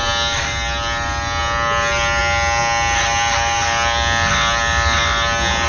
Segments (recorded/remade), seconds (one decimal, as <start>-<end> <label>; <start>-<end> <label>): 0.0-5.7 recorded